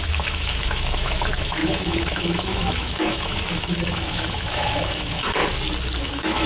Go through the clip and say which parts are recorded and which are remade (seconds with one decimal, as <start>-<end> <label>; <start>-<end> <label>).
0.0-5.4 remade; 5.4-6.0 recorded; 6.0-6.5 remade